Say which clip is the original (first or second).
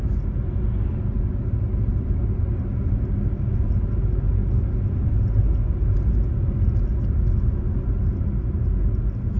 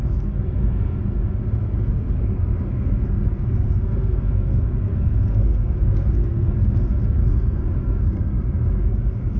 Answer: first